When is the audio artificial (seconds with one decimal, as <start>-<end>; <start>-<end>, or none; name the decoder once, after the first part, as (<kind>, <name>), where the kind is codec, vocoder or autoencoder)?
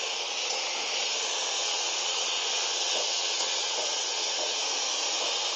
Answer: 1.6-4.6 (vocoder, WaveNeXt)